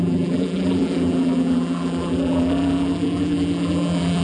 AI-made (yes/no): yes